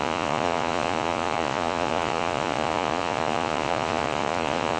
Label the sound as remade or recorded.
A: remade